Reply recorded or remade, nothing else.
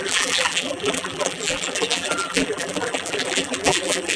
remade